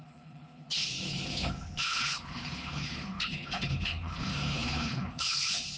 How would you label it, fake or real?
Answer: fake